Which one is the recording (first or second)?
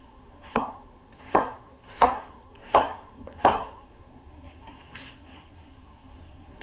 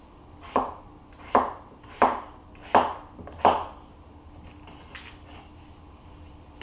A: second